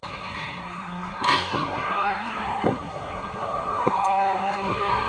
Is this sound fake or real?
fake